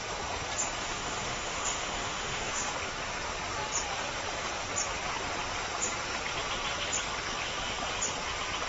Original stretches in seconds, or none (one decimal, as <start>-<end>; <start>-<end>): 0.0-0.8; 2.7-8.7